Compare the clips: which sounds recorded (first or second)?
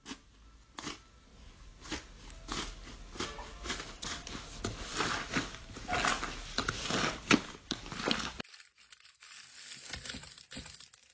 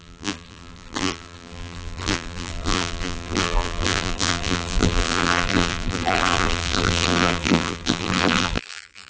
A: first